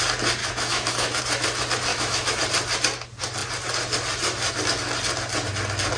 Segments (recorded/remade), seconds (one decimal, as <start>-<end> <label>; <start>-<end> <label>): 0.0-0.4 recorded; 0.4-1.2 remade; 1.2-1.9 recorded; 1.9-2.4 remade; 2.4-6.0 recorded